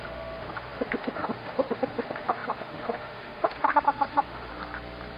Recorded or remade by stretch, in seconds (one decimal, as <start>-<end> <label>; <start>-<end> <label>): 0.0-4.5 remade; 4.5-5.2 recorded

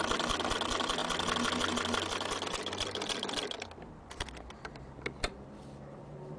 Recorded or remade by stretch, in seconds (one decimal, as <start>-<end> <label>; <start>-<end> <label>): 0.0-6.4 recorded

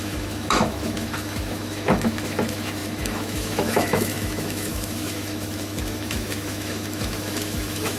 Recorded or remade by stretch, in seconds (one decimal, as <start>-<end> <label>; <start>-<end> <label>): 0.0-8.0 remade